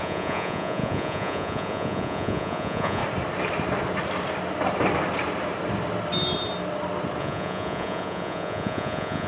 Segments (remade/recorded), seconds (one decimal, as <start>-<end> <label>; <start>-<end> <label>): 0.0-3.0 remade; 3.0-7.2 recorded; 7.2-9.3 remade